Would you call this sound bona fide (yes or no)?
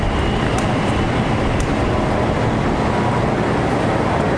yes